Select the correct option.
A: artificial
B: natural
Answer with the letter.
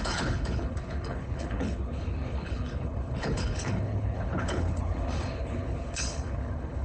A